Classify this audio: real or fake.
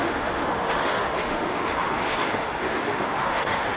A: fake